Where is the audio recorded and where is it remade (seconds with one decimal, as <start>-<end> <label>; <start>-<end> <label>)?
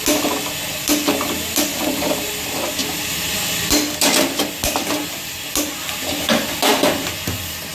0.0-1.7 recorded; 1.7-2.3 remade; 2.3-7.7 recorded